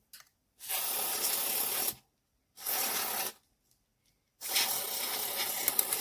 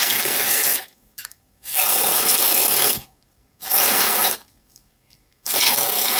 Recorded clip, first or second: first